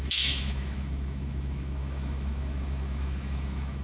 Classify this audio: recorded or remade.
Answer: remade